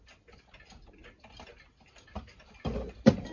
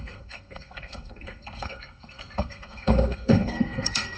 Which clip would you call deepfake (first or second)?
second